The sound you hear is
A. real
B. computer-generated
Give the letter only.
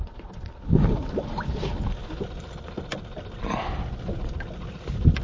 A